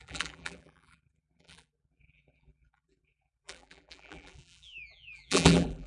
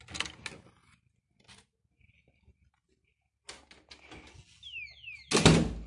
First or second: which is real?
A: second